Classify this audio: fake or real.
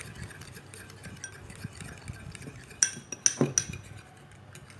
real